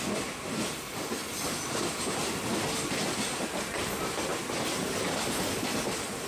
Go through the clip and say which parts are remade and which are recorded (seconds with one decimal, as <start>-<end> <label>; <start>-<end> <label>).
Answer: 0.0-1.2 remade; 1.2-3.1 recorded; 3.1-4.3 remade; 4.3-5.3 recorded; 5.3-6.3 remade